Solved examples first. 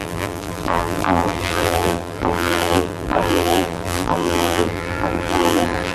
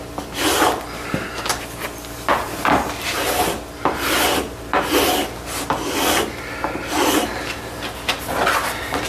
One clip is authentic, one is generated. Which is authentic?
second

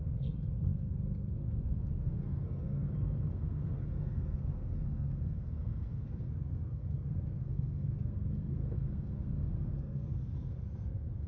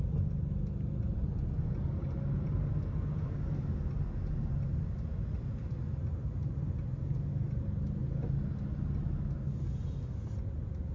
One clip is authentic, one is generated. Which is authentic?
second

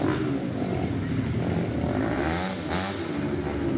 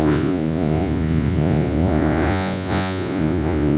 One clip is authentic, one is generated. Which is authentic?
first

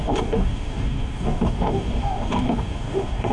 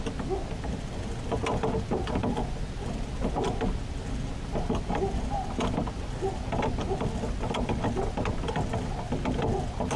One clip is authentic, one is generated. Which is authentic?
second